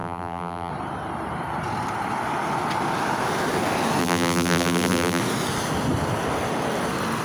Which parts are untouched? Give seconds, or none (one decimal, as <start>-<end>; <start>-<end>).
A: 0.7-4.0; 5.2-7.2